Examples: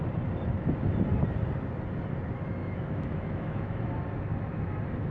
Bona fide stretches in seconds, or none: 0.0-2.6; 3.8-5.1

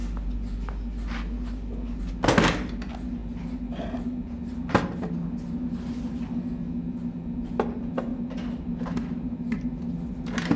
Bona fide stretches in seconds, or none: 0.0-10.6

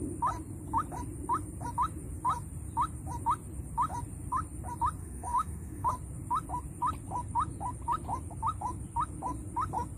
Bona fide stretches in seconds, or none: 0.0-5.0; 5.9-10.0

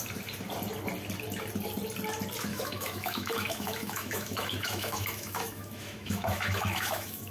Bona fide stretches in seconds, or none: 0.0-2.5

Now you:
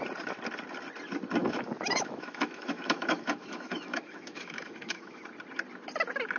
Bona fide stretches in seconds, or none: 0.0-1.4; 5.2-6.4

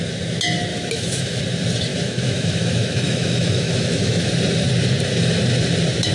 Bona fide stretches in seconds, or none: 0.0-0.7; 1.4-1.9; 4.3-6.1

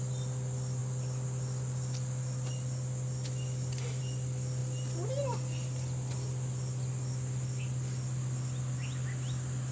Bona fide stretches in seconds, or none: 0.0-9.7